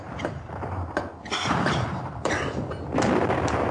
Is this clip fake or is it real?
fake